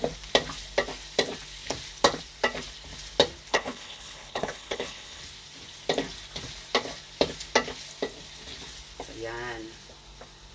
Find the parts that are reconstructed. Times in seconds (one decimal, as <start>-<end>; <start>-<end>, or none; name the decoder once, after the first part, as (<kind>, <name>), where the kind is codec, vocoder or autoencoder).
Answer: 3.5-5.2 (codec, HILCodec)